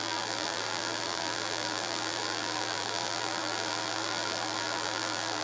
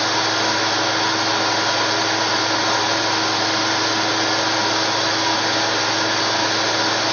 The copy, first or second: first